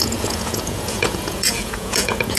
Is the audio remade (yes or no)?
yes